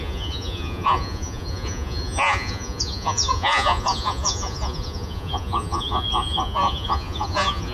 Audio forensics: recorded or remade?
remade